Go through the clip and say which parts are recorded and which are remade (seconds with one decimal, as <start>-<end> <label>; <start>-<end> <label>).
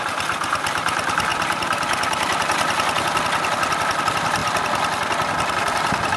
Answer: 0.0-6.2 recorded